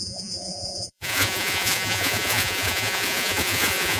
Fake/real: fake